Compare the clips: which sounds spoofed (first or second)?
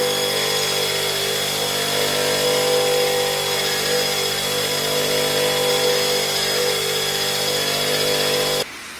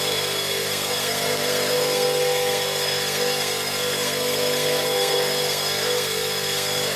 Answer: second